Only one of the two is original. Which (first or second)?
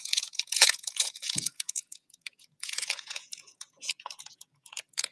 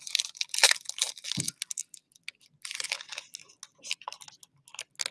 second